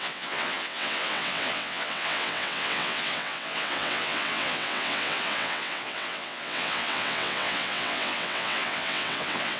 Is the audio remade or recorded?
remade